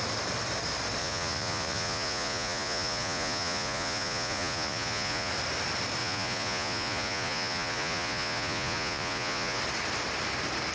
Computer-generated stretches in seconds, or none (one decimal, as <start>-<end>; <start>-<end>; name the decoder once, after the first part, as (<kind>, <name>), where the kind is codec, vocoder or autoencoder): 1.0-5.3 (vocoder, Vocos); 6.0-9.6